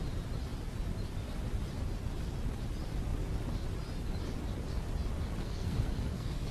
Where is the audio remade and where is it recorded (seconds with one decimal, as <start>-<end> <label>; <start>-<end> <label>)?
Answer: 0.0-5.4 recorded; 5.4-6.5 remade